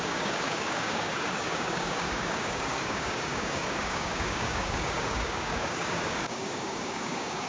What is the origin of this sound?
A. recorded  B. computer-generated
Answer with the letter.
B